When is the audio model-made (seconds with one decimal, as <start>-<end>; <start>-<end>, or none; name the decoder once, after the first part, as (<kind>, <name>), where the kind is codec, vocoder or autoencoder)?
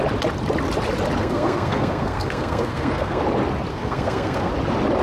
1.2-3.2 (codec, SNAC); 3.7-4.5